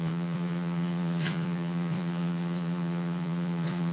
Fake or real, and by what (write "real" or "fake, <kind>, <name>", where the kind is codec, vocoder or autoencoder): fake, vocoder, Vocos